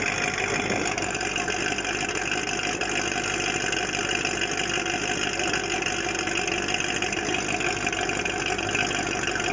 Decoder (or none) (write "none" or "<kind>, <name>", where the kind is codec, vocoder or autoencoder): none